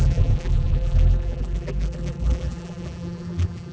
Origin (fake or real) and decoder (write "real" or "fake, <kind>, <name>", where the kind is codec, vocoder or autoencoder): fake, vocoder, BigVGAN v2